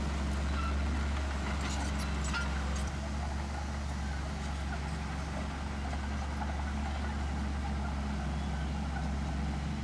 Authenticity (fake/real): real